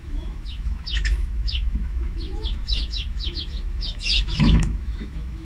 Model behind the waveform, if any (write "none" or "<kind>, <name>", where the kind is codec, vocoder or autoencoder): autoencoder, DAC-VAE